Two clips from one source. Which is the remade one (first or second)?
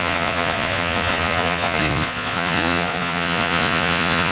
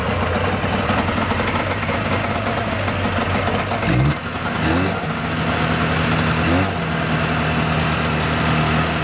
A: first